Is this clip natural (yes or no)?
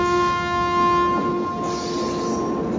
yes